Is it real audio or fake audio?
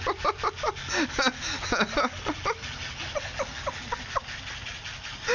real